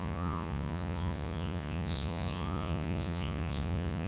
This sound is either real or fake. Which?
fake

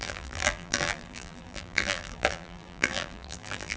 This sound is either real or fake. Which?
fake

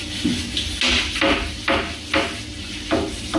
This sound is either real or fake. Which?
real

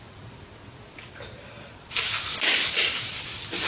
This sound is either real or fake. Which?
real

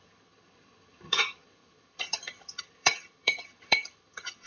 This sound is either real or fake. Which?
fake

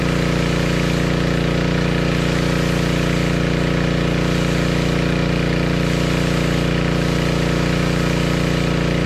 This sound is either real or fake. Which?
real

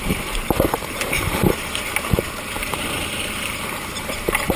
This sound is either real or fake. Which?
fake